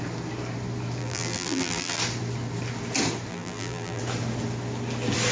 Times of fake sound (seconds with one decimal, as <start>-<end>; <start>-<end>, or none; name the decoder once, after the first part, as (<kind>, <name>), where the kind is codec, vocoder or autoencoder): 1.0-2.0 (vocoder, BigVGAN v2); 3.3-4.0